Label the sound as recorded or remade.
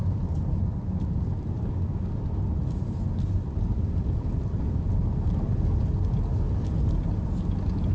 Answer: recorded